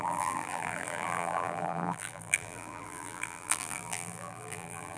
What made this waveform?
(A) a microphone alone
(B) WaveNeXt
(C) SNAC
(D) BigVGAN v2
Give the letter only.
D